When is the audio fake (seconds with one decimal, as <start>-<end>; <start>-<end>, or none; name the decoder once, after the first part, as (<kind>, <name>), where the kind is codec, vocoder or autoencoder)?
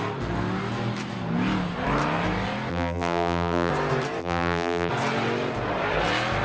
2.7-3.7 (vocoder, BigVGAN v2); 4.2-4.9